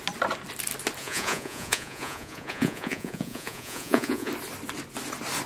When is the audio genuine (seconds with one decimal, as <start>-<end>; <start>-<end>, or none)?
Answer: 0.0-1.0; 4.3-5.5